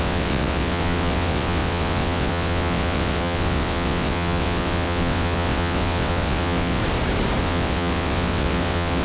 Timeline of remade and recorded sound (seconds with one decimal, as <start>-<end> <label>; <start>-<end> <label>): 0.0-6.8 remade; 6.8-7.4 recorded; 7.4-9.0 remade

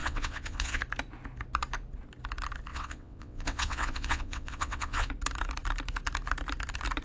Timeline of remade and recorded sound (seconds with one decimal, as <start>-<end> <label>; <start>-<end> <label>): 0.0-0.8 remade; 0.8-2.7 recorded; 2.7-5.1 remade; 5.1-7.0 recorded

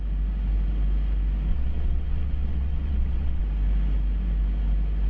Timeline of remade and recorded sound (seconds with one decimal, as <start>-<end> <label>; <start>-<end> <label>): 0.0-1.5 recorded; 1.5-3.4 remade; 3.4-5.1 recorded

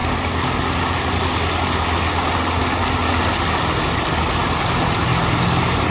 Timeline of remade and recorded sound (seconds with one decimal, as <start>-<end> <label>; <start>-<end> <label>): 0.0-5.9 recorded